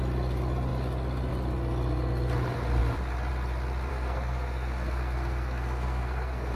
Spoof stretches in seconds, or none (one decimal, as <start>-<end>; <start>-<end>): 3.9-6.6